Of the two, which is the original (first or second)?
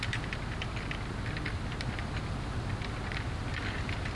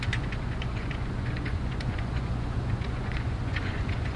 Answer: first